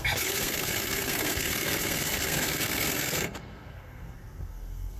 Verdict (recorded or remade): remade